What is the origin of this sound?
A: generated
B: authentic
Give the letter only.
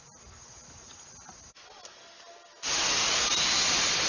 B